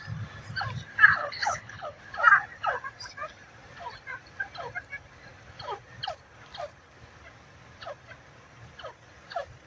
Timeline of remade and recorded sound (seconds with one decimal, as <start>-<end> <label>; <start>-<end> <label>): 0.0-1.2 recorded; 1.2-2.0 remade; 2.0-9.7 recorded